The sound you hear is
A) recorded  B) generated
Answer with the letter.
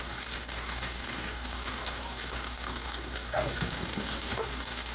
B